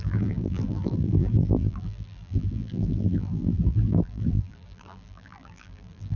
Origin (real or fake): fake